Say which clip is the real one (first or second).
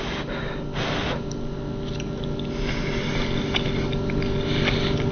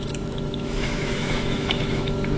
first